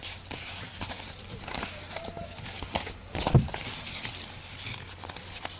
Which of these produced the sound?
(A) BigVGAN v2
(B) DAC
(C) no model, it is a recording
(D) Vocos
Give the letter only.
C